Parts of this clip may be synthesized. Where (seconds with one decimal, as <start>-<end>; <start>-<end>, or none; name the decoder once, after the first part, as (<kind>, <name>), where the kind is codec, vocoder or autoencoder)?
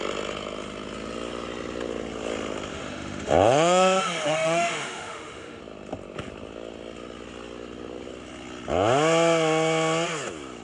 2.7-5.6 (autoencoder, DAC-VAE)